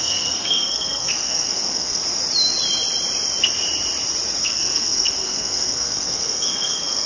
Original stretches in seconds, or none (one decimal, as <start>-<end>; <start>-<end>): 2.0-4.4